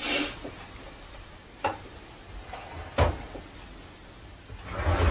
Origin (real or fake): real